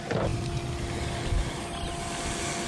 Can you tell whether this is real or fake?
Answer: real